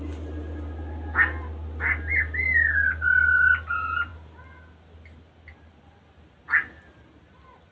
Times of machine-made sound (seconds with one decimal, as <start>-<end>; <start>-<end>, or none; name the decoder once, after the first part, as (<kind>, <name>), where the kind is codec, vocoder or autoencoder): none